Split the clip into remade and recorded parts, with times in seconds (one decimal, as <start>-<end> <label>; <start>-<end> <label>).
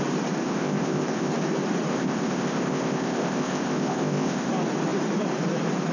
0.0-0.4 recorded; 0.4-1.3 remade; 1.3-1.9 recorded; 1.9-4.5 remade; 4.5-5.9 recorded